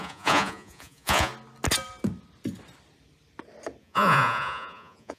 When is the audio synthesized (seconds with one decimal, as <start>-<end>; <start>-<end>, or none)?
0.0-1.3; 3.8-5.2